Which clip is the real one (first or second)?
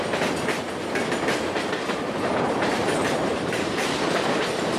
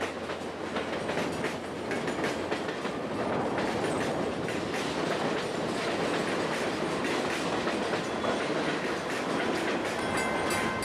second